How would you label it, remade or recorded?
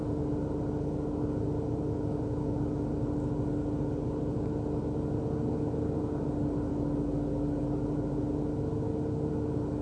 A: recorded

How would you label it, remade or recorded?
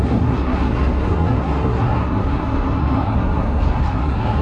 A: remade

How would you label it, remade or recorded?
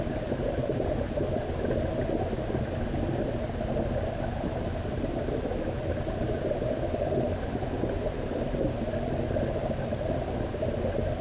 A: recorded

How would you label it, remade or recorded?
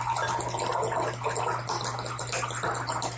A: recorded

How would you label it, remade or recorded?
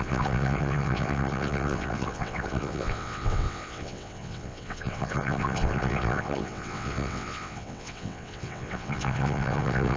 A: remade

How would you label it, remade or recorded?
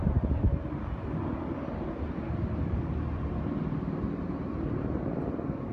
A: recorded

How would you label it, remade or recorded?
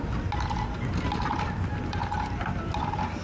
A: recorded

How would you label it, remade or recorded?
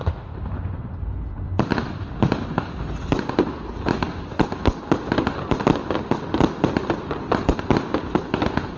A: recorded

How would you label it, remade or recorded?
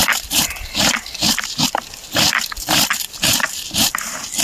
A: recorded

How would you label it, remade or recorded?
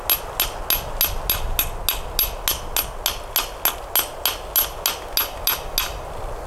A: recorded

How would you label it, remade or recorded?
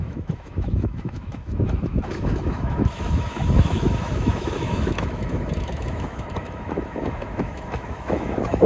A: remade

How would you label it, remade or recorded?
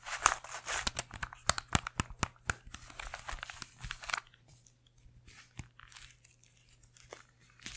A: recorded